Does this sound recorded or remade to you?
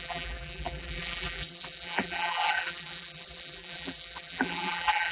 remade